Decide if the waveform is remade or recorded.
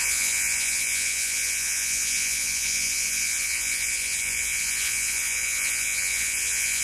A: remade